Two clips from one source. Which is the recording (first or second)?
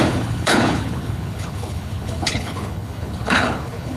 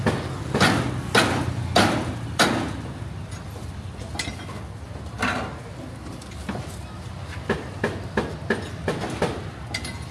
second